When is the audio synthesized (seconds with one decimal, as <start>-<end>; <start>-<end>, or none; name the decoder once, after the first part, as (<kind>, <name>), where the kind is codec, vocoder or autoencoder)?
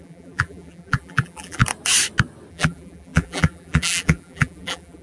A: 0.0-1.6 (vocoder, BigVGAN v2); 2.5-5.0